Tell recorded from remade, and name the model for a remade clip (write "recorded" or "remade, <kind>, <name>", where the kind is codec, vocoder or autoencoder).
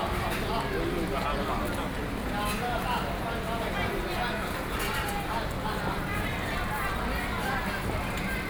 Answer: recorded